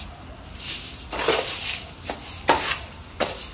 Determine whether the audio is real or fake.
real